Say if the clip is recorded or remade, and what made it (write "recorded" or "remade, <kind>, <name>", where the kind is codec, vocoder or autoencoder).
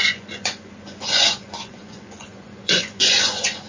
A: remade, vocoder, Vocos